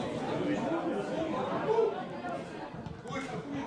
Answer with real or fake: real